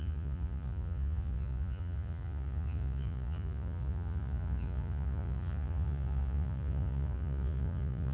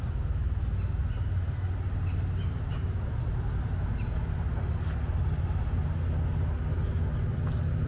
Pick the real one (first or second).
second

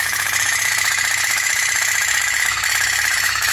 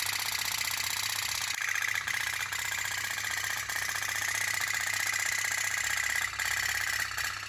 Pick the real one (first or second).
second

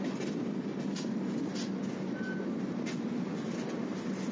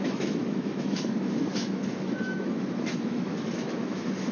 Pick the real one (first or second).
first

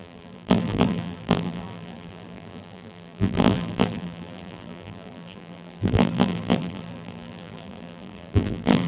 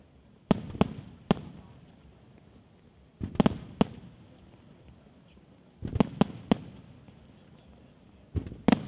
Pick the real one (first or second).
second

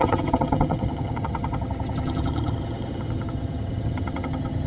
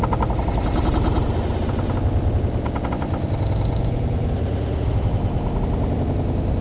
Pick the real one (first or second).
second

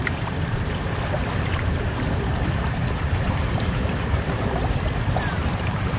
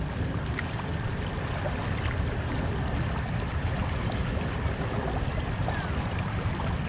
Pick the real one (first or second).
second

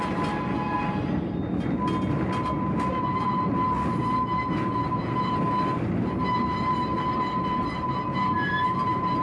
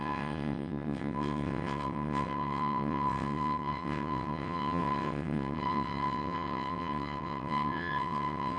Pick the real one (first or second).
first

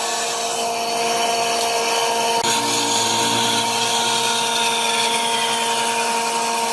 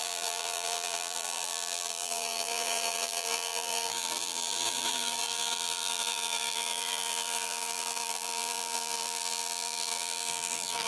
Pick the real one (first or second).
first